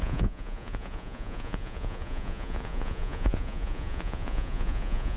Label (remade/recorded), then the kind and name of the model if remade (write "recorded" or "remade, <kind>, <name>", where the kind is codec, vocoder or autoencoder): remade, vocoder, Vocos